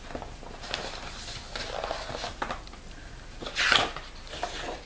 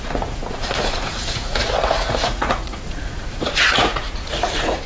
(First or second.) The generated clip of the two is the second